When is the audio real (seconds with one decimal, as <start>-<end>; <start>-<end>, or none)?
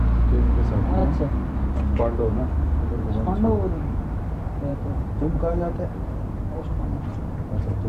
0.0-4.7